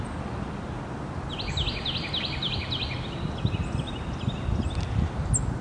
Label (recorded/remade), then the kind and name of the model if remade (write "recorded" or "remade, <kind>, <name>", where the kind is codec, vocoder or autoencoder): recorded